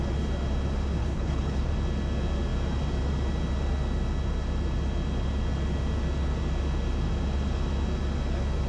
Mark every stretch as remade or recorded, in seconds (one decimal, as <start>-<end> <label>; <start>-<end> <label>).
0.0-1.0 recorded; 1.0-1.7 remade; 1.7-8.7 recorded